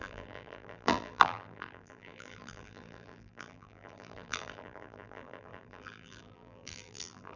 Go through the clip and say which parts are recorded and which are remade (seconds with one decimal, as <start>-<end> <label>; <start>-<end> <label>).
0.0-7.4 remade